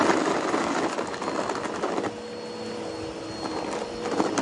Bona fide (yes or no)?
yes